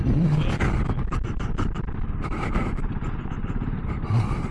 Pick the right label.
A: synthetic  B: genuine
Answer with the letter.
B